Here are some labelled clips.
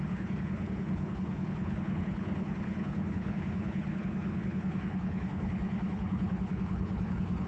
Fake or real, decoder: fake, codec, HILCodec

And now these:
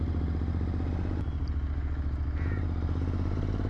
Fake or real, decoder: real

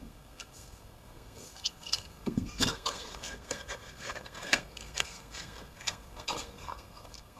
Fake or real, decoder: fake, codec, SNAC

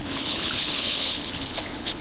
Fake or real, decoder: fake, codec, HILCodec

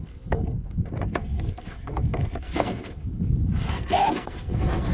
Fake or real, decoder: fake, codec, SNAC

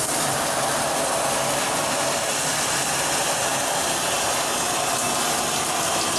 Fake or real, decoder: real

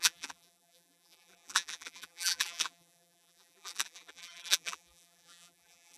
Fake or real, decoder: fake, vocoder, BigVGAN v2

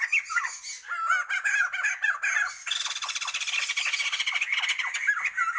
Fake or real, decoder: real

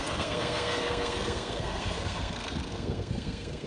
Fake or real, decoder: fake, codec, SNAC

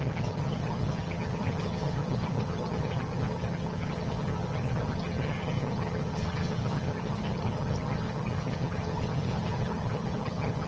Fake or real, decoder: fake, vocoder, HiFi-GAN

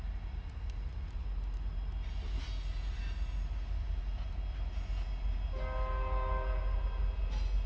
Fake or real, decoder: real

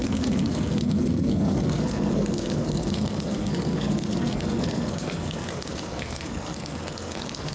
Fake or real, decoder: fake, codec, SNAC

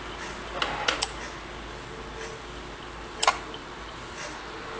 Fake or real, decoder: real